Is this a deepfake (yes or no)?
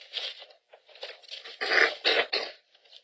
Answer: no